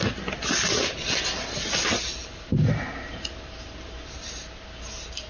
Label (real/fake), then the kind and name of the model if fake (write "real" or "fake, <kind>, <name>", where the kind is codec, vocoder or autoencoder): real